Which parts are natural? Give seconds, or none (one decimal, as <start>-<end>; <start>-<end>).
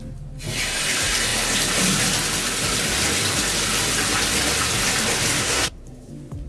0.0-5.4; 6.1-6.5